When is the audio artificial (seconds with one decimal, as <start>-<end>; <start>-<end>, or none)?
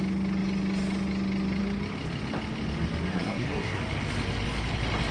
3.1-3.8